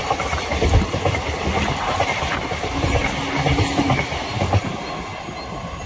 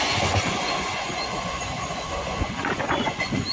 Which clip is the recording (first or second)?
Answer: first